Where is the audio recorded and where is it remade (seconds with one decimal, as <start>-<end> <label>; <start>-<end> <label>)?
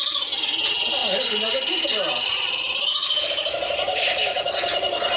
0.0-3.9 recorded; 3.9-4.5 remade; 4.5-5.2 recorded